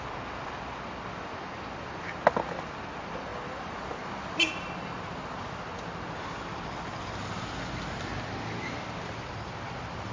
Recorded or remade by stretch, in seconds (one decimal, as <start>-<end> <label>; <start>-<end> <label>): 0.0-10.1 recorded